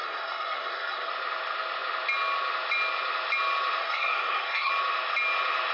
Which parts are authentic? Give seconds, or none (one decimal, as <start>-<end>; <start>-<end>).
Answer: 1.1-3.8; 4.7-5.7